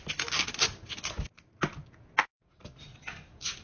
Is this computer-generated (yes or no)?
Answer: no